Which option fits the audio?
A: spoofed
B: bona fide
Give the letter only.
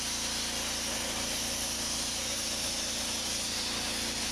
B